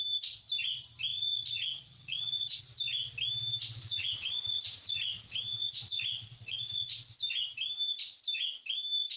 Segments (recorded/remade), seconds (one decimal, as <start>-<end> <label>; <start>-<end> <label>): 0.0-1.1 recorded; 1.1-2.6 remade; 2.6-3.8 recorded; 3.8-6.9 remade; 6.9-9.2 recorded